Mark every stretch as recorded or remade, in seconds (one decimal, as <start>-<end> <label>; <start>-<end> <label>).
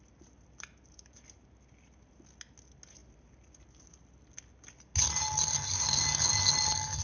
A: 0.0-7.0 recorded